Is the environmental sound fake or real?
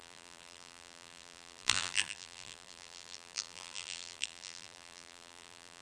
fake